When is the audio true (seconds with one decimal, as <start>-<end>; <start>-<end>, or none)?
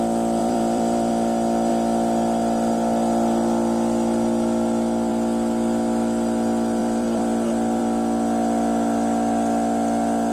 0.0-0.4; 1.1-6.8; 7.8-10.3